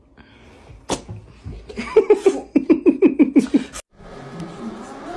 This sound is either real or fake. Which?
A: real